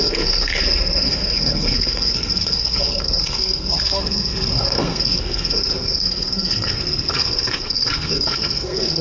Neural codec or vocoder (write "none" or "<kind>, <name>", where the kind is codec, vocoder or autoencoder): codec, SNAC